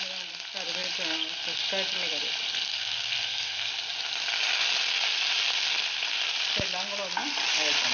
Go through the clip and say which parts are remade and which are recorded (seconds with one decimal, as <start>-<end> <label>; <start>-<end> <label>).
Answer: 0.0-2.7 recorded; 2.7-3.7 remade; 3.7-7.9 recorded